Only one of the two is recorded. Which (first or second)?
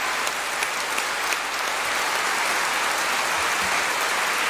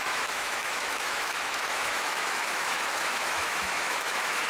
first